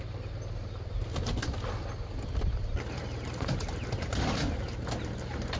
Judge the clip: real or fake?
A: real